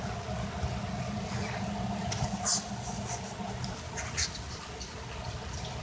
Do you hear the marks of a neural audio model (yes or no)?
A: no